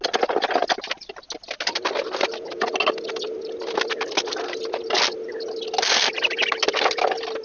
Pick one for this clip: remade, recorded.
recorded